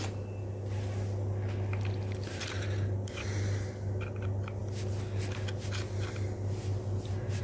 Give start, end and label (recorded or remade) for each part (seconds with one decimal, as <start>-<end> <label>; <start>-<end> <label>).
0.0-7.4 recorded